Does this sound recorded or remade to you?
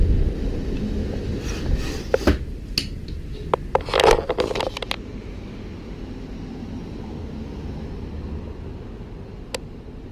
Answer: recorded